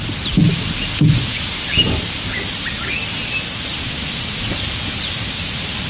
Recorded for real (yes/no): yes